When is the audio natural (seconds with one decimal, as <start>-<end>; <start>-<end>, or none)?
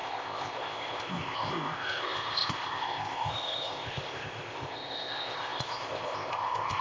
none